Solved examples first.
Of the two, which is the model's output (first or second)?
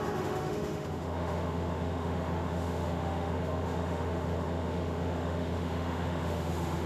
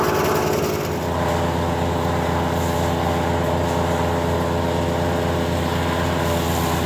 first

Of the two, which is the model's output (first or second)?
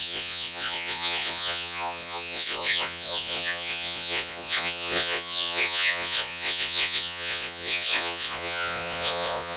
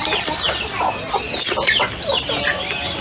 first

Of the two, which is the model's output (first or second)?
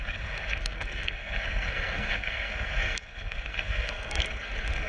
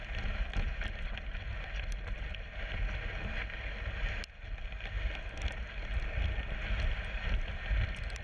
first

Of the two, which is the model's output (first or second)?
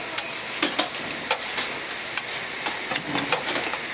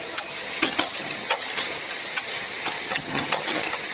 second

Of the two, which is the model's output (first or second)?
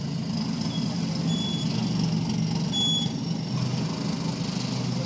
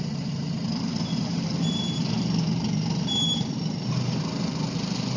second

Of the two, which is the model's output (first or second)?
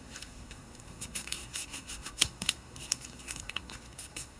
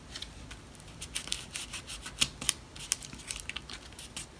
first